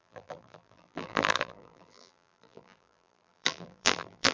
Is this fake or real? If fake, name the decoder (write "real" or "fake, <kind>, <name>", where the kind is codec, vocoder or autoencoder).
fake, vocoder, BigVGAN v2